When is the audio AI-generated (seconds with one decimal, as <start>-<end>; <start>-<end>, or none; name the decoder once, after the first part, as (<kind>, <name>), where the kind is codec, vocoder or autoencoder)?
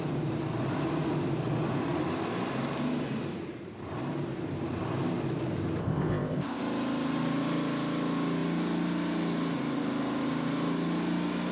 5.8-6.6 (codec, ZipCodec)